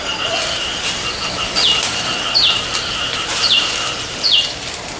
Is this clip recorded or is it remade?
remade